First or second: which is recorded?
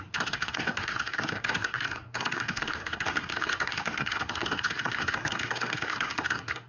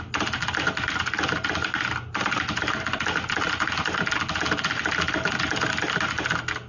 second